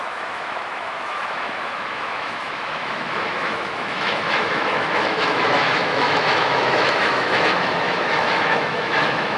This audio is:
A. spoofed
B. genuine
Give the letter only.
A